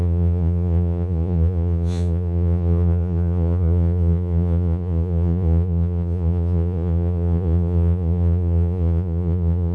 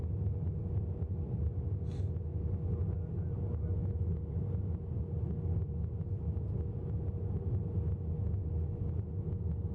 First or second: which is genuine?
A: second